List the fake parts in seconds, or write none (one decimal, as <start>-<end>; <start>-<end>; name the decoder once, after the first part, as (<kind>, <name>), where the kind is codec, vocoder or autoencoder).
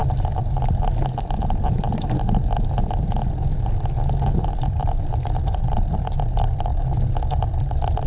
4.6-6.7 (vocoder, BigVGAN v2); 7.4-8.1